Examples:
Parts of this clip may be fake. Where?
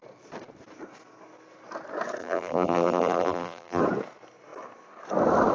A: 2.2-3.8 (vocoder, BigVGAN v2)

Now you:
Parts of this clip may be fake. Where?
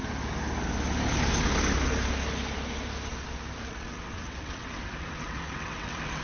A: 3.7-6.2 (vocoder, WaveNeXt)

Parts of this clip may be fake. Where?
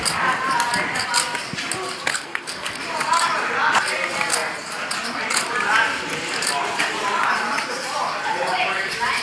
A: 2.1-2.8 (codec, SNAC)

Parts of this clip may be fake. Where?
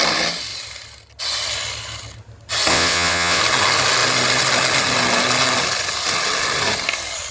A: 2.7-3.4 (vocoder, WaveNeXt)